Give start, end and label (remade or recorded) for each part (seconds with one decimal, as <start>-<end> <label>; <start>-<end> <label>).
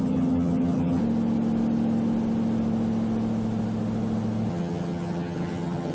0.0-1.0 remade; 1.0-4.5 recorded; 4.5-5.9 remade